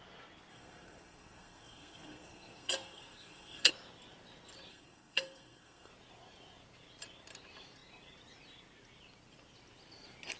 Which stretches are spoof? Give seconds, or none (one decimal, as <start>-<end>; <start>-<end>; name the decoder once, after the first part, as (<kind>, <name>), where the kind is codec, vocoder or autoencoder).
0.5-3.7 (codec, SNAC); 4.7-5.9